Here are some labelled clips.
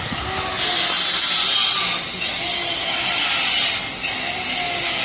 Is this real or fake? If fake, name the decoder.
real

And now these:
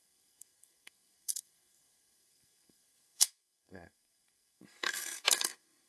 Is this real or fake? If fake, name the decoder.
fake, codec, SNAC